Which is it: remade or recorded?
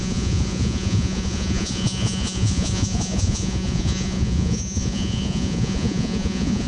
remade